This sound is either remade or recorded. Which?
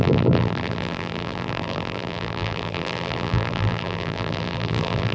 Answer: remade